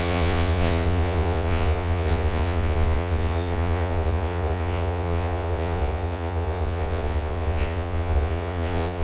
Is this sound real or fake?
fake